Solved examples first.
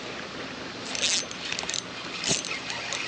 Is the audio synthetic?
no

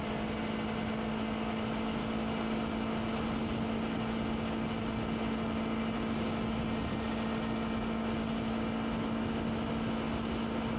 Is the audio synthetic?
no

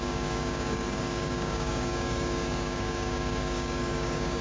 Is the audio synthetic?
yes